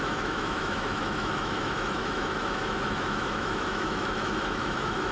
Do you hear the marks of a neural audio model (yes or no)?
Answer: yes